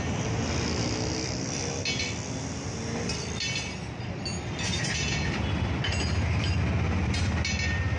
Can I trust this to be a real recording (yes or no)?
yes